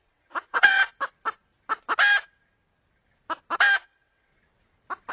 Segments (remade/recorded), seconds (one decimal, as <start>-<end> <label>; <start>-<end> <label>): 0.0-0.8 remade; 0.8-3.8 recorded; 3.8-4.3 remade; 4.3-5.1 recorded